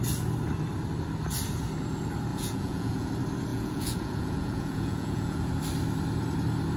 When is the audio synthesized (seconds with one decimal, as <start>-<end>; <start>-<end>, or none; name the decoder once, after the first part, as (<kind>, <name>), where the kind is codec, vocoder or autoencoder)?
2.3-3.1 (vocoder, Vocos); 3.5-5.5